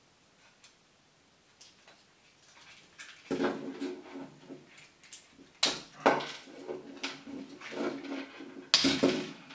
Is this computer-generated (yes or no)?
no